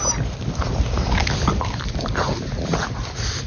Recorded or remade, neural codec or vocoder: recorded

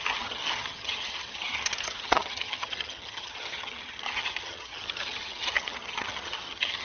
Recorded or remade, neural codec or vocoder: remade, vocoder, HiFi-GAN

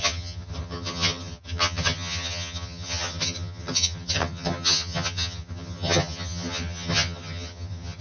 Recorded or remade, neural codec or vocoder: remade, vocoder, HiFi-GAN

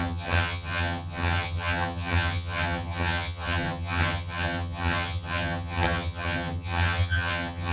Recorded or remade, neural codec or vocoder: remade, vocoder, HiFi-GAN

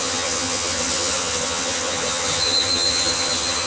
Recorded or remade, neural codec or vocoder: remade, vocoder, HiFi-GAN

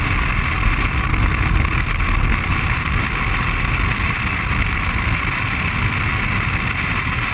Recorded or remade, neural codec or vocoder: recorded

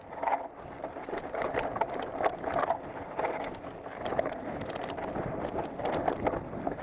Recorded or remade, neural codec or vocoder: recorded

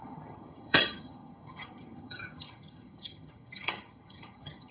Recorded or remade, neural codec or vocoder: remade, vocoder, HiFi-GAN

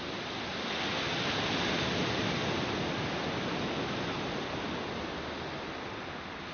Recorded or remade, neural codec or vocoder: recorded